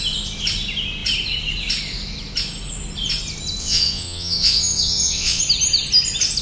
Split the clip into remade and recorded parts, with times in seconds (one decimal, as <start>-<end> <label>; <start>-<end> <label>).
0.0-3.6 recorded; 3.6-5.4 remade; 5.4-6.4 recorded